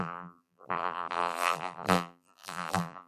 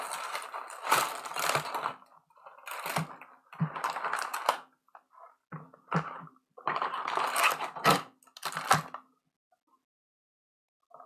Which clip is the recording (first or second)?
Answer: second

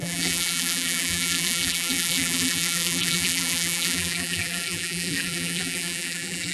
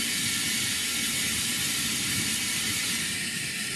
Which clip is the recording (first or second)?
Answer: second